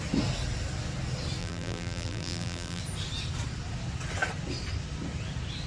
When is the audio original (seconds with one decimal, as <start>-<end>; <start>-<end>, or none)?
0.0-1.4; 2.8-5.7